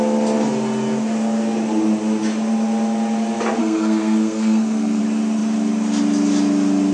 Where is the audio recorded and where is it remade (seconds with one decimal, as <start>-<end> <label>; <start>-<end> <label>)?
0.0-3.6 recorded; 3.6-5.0 remade; 5.0-6.9 recorded